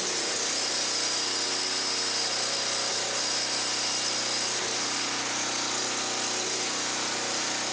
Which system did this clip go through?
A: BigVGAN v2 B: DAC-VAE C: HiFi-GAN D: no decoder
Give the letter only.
D